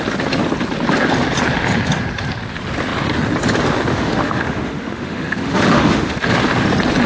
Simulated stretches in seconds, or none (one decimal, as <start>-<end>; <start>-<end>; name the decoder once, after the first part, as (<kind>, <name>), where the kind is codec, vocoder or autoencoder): 3.9-6.3 (autoencoder, DAC-VAE)